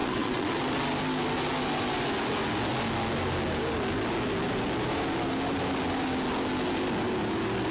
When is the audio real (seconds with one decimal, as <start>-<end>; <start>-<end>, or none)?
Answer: 0.5-7.7